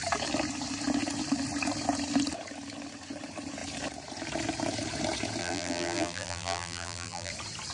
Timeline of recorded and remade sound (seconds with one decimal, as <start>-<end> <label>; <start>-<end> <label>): 0.0-5.4 recorded; 5.4-7.3 remade; 7.3-7.7 recorded